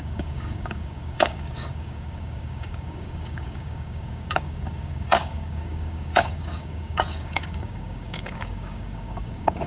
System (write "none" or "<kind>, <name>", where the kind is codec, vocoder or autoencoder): codec, DAC